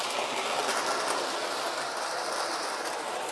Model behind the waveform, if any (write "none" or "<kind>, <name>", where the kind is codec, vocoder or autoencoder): none